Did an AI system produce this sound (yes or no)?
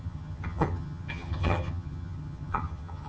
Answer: yes